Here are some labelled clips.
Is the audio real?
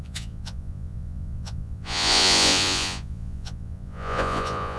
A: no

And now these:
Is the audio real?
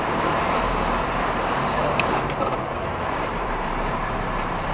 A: no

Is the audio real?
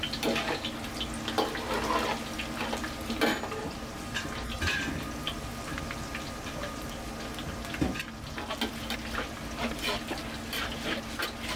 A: yes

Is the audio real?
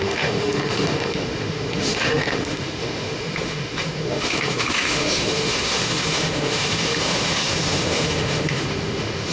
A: no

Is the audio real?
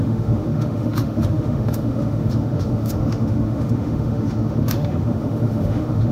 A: no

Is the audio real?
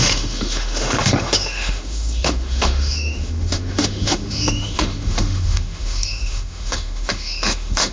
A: no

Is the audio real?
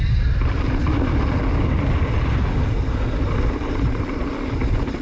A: yes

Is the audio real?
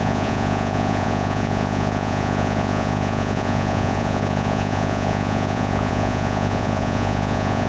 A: no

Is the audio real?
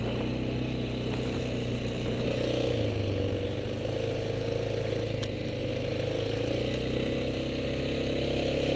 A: yes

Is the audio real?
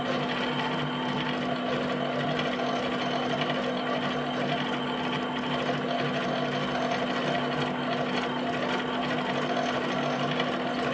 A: yes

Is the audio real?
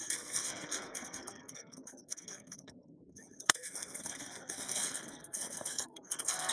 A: no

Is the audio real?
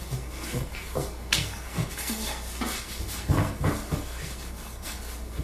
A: no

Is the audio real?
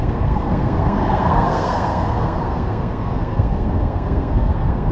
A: no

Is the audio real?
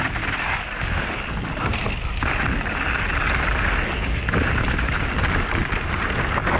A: yes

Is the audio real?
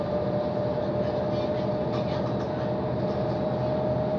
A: yes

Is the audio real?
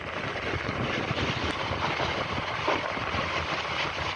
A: yes